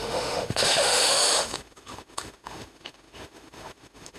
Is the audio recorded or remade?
remade